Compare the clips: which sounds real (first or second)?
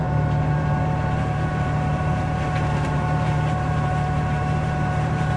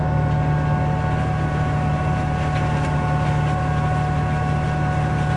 second